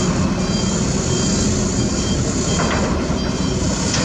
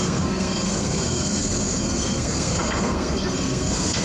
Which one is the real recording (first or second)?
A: first